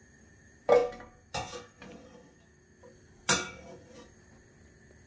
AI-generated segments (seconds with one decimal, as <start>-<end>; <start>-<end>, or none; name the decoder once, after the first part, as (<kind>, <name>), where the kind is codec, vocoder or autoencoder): none

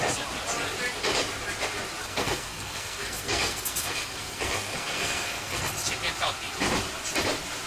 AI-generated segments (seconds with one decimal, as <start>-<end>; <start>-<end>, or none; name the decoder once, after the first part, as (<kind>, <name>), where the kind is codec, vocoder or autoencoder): 2.0-5.7 (codec, SNAC)

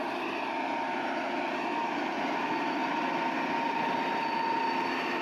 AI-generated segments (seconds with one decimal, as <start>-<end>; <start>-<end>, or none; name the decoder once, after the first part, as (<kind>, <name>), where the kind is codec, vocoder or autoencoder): none

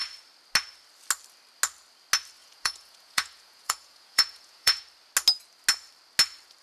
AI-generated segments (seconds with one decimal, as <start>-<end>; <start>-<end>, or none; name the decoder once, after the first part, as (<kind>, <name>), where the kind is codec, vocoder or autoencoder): 2.4-4.8 (vocoder, Vocos)

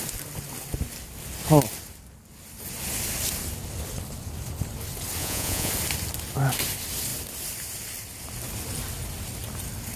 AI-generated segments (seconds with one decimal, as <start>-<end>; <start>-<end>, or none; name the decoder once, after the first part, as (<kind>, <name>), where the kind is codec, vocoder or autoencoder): 5.2-5.7 (vocoder, Vocos)